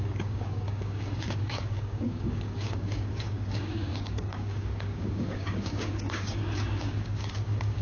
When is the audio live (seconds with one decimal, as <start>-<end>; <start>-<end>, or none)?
none